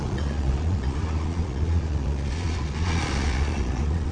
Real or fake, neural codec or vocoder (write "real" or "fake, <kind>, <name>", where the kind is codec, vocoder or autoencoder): fake, vocoder, Vocos